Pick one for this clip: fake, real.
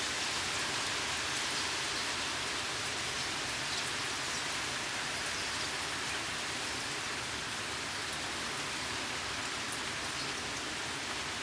real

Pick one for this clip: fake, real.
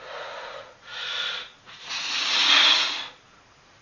fake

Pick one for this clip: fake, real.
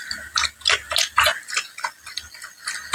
real